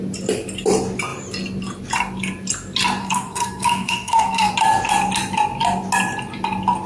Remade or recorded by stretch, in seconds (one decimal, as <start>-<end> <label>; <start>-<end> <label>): 0.0-3.0 recorded; 3.0-4.5 remade; 4.5-6.9 recorded